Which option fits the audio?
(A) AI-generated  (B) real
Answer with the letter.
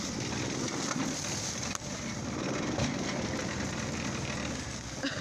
B